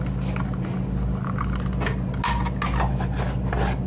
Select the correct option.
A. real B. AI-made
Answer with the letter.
A